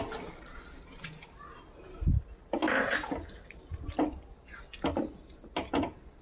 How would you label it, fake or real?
real